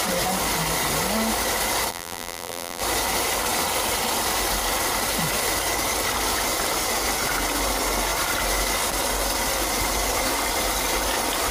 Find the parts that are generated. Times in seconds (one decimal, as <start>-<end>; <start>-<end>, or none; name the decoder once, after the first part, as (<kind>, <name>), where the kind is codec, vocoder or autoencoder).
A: 1.9-2.8 (vocoder, BigVGAN v2)